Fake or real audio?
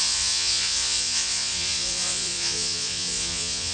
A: fake